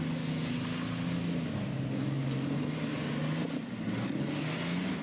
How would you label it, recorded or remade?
recorded